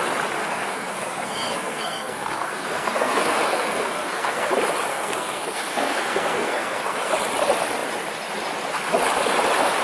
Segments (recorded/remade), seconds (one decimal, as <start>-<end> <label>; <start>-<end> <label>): 0.0-0.4 recorded; 0.4-4.5 remade; 4.5-4.9 recorded; 4.9-7.1 remade; 7.1-9.8 recorded